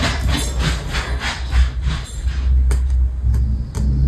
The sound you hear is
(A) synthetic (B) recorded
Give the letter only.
B